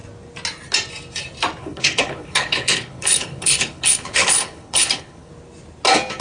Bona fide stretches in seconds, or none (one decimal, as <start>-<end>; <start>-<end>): 0.0-1.6; 5.3-6.2